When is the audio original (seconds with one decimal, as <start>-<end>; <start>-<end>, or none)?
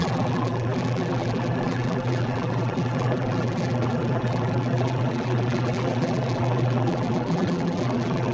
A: none